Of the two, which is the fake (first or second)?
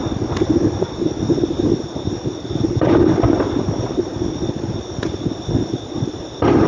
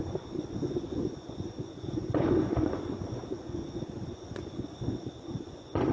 second